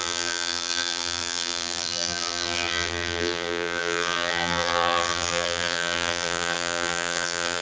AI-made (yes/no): yes